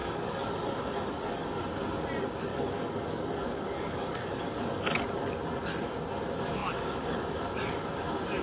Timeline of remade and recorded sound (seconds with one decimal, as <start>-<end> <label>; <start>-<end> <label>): 0.0-1.6 remade; 1.6-2.5 recorded; 2.5-5.0 remade; 5.0-6.6 recorded; 6.6-7.4 remade; 7.4-8.4 recorded